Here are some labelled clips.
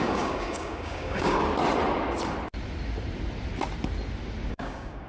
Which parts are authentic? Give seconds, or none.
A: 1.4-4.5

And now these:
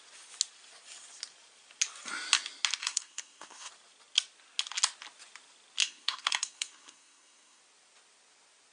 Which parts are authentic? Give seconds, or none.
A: 0.0-2.8; 3.7-5.8; 7.6-8.7

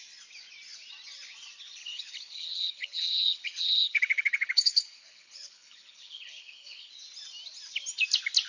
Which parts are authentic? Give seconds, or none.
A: 0.0-1.8; 6.9-8.5

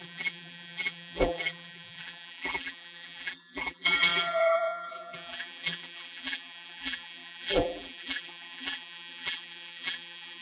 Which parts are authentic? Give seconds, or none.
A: none

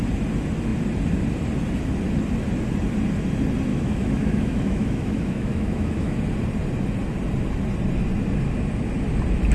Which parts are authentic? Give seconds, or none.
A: 0.0-3.7; 6.2-9.5

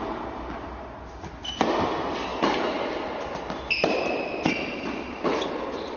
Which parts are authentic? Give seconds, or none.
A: 0.0-6.0

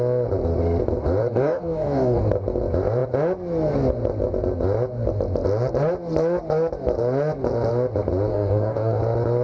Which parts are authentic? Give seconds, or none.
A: 0.0-1.2; 2.2-8.3; 9.0-9.4

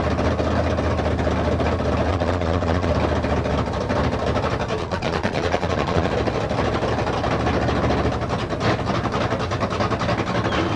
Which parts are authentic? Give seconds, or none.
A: 0.0-2.1; 2.9-4.8; 6.1-10.8